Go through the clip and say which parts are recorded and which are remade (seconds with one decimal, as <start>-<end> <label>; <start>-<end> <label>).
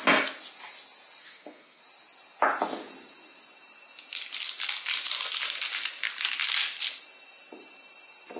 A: 0.0-1.2 recorded; 1.2-1.8 remade; 1.8-8.4 recorded